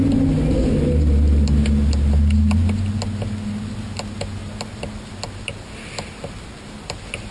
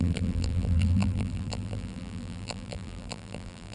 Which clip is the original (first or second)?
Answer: first